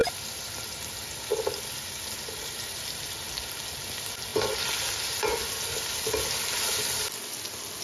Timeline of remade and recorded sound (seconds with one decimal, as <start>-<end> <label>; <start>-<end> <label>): 0.0-7.8 recorded